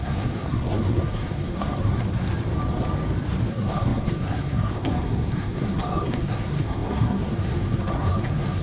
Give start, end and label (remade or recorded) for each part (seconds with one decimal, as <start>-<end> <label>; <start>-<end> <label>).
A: 0.0-2.0 remade; 2.0-3.5 recorded; 3.5-8.6 remade